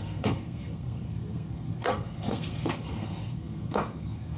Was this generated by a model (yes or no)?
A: yes